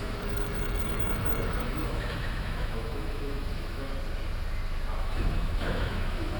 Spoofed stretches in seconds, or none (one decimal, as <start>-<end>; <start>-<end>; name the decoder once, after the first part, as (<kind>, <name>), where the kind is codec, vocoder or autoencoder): 0.0-3.9 (autoencoder, DAC-VAE); 5.0-6.4